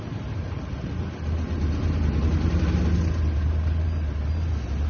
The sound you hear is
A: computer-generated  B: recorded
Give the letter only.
B